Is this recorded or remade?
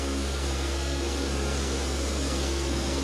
remade